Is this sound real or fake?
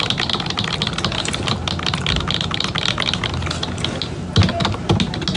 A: real